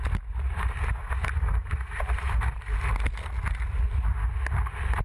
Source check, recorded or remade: recorded